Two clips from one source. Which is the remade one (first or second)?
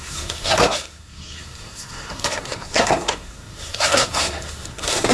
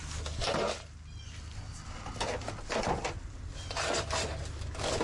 first